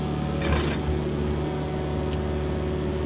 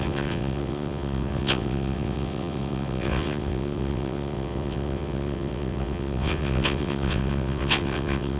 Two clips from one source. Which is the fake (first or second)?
second